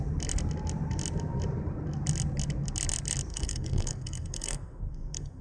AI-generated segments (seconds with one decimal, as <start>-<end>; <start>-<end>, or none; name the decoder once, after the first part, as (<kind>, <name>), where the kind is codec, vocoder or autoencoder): 3.3-5.4 (codec, SNAC)